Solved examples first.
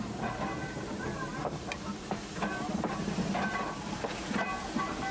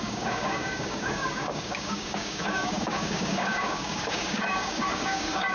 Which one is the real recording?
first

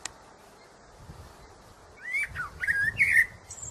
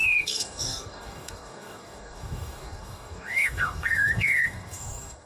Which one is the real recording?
first